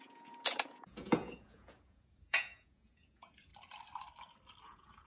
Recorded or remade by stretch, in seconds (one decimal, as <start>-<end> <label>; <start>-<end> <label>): 0.0-3.5 remade; 3.5-4.6 recorded; 4.6-5.1 remade